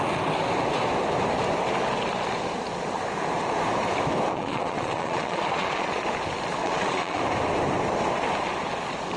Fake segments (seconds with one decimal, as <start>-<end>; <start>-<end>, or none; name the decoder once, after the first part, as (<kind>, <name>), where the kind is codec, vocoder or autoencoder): 4.3-6.0 (vocoder, Vocos); 6.6-7.2